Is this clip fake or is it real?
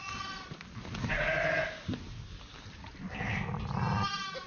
real